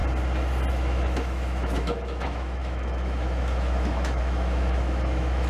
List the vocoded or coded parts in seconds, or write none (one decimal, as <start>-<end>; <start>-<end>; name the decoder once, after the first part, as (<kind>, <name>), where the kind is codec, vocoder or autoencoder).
0.7-5.5 (autoencoder, DAC-VAE)